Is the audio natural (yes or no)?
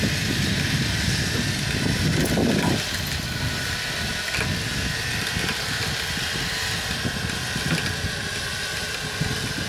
yes